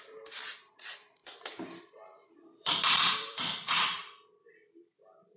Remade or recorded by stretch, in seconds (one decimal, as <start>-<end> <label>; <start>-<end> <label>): 0.0-5.4 remade